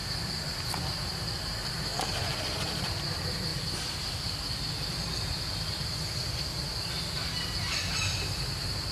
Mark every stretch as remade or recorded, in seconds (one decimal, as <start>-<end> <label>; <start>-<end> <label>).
0.0-1.9 recorded; 1.9-2.4 remade; 2.4-8.9 recorded